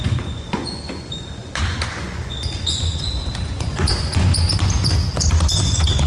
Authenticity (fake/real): fake